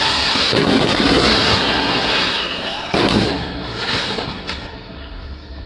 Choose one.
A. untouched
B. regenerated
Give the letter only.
B